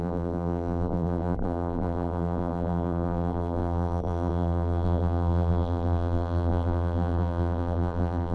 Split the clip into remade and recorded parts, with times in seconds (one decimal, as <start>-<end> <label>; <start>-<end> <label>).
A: 0.0-8.3 remade